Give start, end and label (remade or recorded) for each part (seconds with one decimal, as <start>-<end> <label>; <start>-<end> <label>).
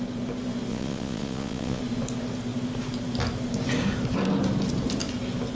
0.0-0.7 recorded; 0.7-1.8 remade; 1.8-5.5 recorded